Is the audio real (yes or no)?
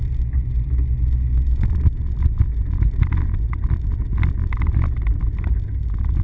yes